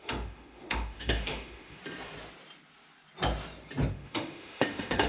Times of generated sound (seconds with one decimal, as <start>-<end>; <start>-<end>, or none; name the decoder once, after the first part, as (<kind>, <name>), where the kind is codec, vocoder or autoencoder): 0.0-1.8 (autoencoder, DAC-VAE); 3.9-5.1